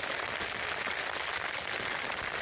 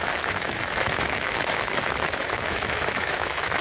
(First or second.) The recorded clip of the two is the first